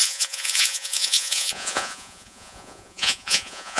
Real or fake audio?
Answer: fake